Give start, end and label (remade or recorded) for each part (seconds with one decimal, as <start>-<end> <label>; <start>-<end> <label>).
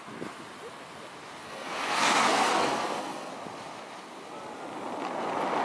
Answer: 0.0-1.4 recorded; 1.4-3.3 remade; 3.3-5.6 recorded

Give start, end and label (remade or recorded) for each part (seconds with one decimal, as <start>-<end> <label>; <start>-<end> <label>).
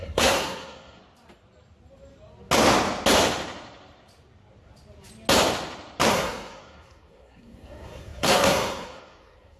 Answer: 0.0-1.0 remade; 1.0-6.1 recorded; 6.1-9.6 remade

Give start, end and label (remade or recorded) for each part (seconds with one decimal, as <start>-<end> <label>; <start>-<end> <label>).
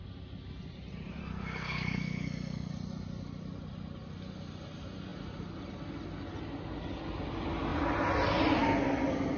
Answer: 0.0-1.2 recorded; 1.2-2.7 remade; 2.7-9.4 recorded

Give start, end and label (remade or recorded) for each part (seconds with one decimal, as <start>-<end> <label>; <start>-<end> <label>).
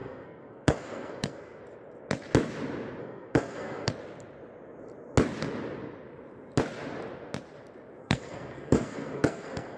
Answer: 0.0-1.6 remade; 1.6-3.0 recorded; 3.0-3.9 remade; 3.9-8.0 recorded; 8.0-9.8 remade